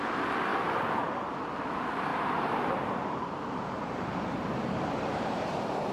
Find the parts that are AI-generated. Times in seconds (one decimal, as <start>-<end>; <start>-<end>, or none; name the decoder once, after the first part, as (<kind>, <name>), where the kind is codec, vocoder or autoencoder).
0.5-1.0 (vocoder, BigVGAN v2); 2.1-5.9